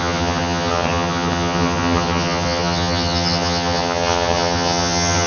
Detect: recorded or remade remade